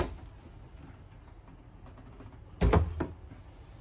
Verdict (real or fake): real